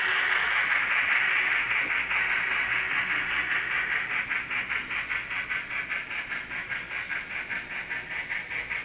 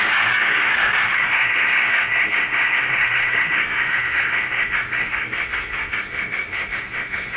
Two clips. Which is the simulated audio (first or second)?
second